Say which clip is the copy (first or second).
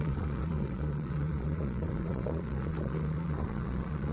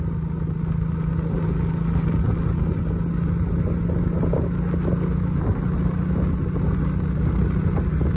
first